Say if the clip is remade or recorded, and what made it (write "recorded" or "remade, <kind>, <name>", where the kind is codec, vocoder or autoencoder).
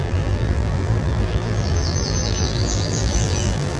remade, vocoder, BigVGAN v2